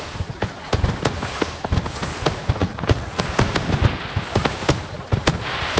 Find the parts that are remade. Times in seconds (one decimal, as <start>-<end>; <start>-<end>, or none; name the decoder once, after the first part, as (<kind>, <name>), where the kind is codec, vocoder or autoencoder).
2.6-3.2 (vocoder, Vocos)